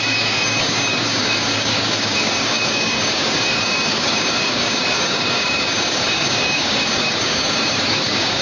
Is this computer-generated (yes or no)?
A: yes